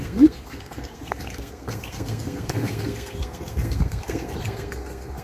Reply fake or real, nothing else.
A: fake